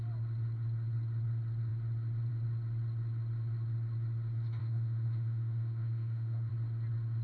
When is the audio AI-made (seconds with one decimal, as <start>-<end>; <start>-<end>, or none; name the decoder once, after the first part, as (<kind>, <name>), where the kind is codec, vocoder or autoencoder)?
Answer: 4.6-6.5 (autoencoder, DAC-VAE)